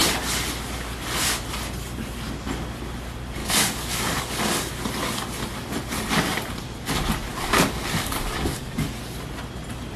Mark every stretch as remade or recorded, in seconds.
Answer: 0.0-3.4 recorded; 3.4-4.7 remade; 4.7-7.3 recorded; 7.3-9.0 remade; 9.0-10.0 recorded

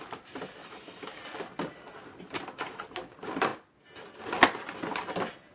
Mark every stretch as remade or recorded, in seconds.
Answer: 0.0-0.6 recorded; 0.6-1.2 remade; 1.2-5.5 recorded

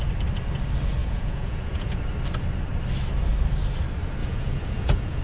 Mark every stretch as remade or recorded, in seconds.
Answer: 0.0-1.0 recorded; 1.0-2.0 remade; 2.0-4.2 recorded; 4.2-5.2 remade

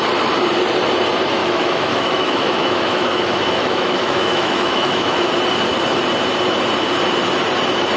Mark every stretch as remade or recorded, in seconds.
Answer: 0.0-1.4 recorded; 1.4-5.3 remade; 5.3-8.0 recorded

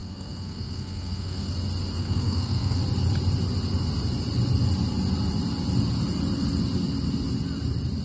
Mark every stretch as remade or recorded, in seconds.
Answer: 0.0-1.5 remade; 1.5-2.0 recorded; 2.0-2.8 remade; 2.8-8.0 recorded

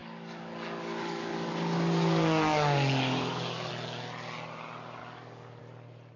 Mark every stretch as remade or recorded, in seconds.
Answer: 0.0-3.7 remade; 3.7-5.0 recorded; 5.0-5.6 remade; 5.6-6.2 recorded

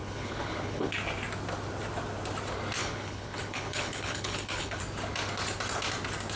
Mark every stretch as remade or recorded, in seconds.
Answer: 0.0-0.9 remade; 0.9-2.8 recorded; 2.8-4.8 remade; 4.8-6.4 recorded